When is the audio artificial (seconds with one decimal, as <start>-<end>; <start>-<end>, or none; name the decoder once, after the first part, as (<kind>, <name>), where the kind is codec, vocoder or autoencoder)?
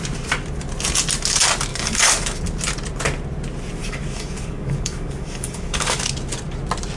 1.7-2.4 (codec, DAC); 3.8-6.0